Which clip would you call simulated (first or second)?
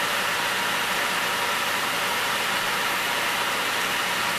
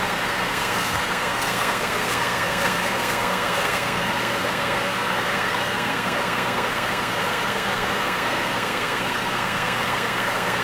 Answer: second